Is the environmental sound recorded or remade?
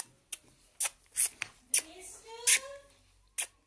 recorded